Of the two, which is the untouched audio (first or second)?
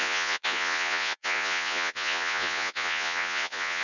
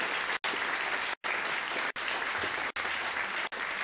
second